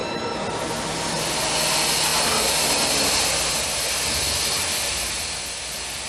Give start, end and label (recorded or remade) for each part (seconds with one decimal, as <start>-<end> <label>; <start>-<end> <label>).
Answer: 0.0-6.1 recorded